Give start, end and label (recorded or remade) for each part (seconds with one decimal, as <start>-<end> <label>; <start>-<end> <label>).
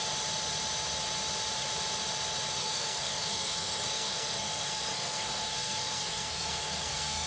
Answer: 0.0-2.6 recorded; 2.6-7.3 remade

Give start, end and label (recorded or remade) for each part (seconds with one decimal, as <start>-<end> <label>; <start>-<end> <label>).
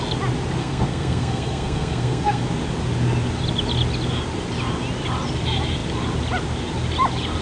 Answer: 0.0-0.6 recorded; 0.6-2.4 remade; 2.4-7.4 recorded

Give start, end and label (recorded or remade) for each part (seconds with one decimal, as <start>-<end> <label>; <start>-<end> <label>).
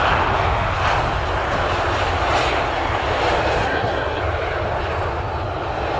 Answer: 0.0-3.6 recorded; 3.6-4.2 remade; 4.2-6.0 recorded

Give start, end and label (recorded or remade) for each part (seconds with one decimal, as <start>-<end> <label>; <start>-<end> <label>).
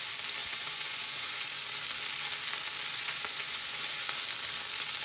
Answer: 0.0-0.4 recorded; 0.4-1.7 remade; 1.7-2.9 recorded; 2.9-4.1 remade; 4.1-5.0 recorded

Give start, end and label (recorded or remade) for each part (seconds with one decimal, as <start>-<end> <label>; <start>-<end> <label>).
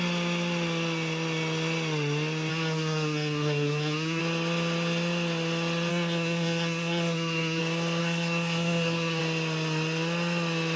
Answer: 0.0-2.5 recorded; 2.5-4.2 remade; 4.2-5.9 recorded; 5.9-7.6 remade; 7.6-8.0 recorded; 8.0-9.2 remade; 9.2-10.8 recorded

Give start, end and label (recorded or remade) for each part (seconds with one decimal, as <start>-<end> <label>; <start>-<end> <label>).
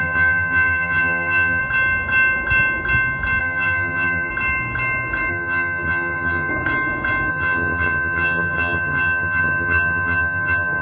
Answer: 0.0-1.6 remade; 1.6-3.4 recorded; 3.4-4.3 remade; 4.3-5.3 recorded; 5.3-6.5 remade; 6.5-7.3 recorded; 7.3-10.8 remade